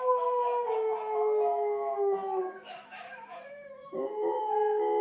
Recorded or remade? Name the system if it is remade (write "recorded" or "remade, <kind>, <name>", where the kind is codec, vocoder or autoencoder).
remade, autoencoder, DAC-VAE